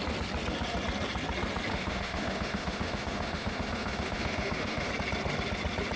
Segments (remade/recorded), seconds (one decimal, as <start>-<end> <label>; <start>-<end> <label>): 0.0-1.7 recorded; 1.7-4.9 remade; 4.9-6.0 recorded